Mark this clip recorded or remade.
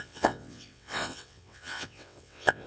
remade